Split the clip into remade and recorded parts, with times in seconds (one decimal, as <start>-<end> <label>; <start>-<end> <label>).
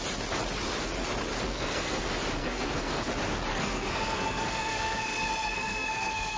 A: 0.0-1.5 recorded; 1.5-2.0 remade; 2.0-2.4 recorded; 2.4-3.0 remade; 3.0-3.5 recorded; 3.5-6.4 remade